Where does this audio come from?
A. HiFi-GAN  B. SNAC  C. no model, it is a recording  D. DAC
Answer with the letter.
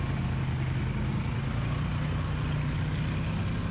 C